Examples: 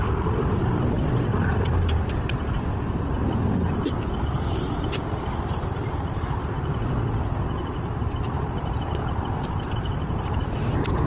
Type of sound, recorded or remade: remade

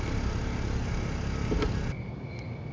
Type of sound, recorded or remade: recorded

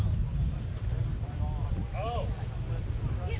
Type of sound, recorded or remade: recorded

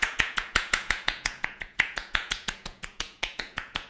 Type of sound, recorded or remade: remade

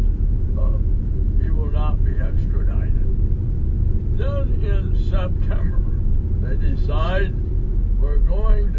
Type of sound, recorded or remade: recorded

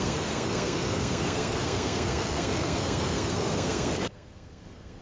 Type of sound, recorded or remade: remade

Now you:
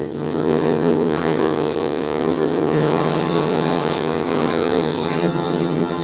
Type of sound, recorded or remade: remade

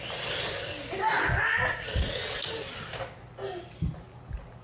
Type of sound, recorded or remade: recorded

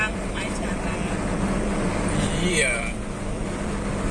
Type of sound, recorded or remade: recorded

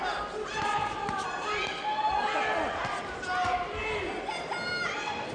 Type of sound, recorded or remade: recorded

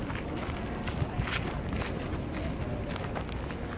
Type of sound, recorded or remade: recorded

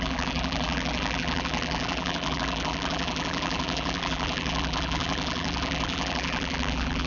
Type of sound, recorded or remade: remade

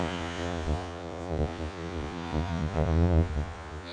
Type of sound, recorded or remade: remade